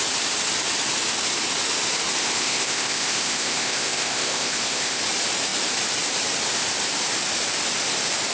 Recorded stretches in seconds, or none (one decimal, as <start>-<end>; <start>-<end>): 0.0-2.2; 5.0-8.3